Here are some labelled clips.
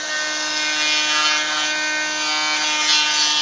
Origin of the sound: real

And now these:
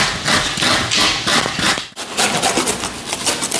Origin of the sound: real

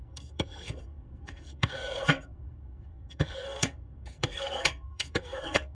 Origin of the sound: fake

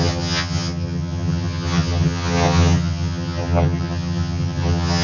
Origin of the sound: fake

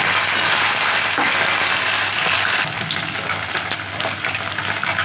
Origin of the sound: real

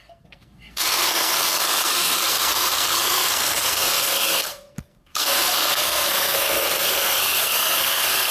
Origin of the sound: fake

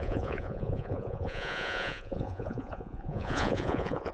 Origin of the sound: fake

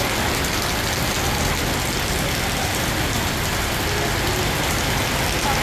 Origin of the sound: real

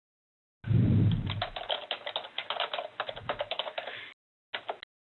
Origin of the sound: real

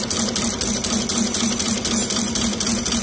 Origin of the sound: real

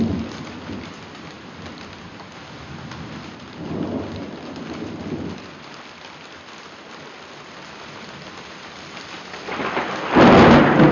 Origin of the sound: real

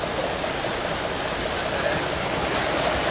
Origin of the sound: real